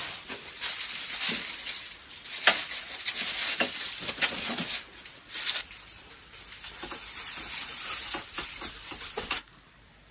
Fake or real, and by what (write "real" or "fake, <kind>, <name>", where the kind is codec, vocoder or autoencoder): real